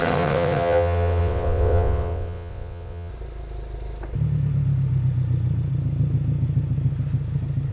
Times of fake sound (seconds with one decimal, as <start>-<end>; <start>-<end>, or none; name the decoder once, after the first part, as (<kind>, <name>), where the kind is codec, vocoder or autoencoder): 0.0-3.1 (vocoder, WaveNeXt)